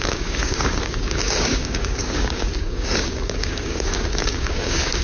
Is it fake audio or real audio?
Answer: fake